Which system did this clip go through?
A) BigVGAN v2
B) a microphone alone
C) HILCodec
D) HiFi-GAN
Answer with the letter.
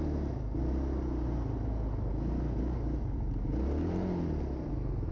B